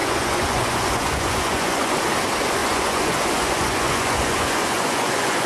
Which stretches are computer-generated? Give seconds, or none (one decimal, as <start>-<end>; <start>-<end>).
0.0-2.0; 2.6-5.5